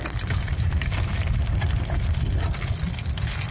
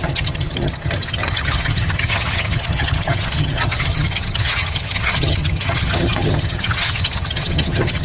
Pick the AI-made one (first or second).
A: second